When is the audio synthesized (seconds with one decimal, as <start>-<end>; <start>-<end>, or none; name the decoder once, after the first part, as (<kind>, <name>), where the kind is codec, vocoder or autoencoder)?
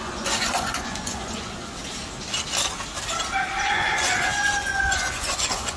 0.0-1.8 (vocoder, Vocos); 3.5-5.8